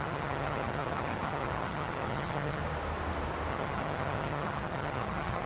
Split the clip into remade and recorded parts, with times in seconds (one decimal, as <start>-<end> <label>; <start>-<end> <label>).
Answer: 0.0-2.6 remade; 2.6-3.5 recorded; 3.5-5.5 remade